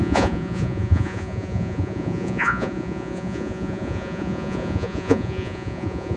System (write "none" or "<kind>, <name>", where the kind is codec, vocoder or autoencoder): vocoder, Vocos